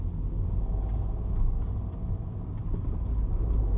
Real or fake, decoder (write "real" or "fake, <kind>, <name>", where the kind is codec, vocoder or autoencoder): real